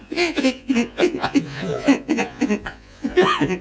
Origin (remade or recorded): remade